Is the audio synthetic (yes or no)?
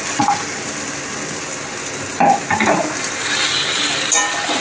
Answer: no